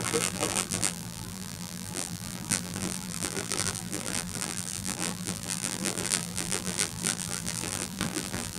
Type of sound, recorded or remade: remade